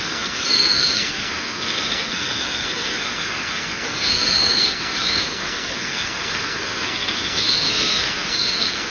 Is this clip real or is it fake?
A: fake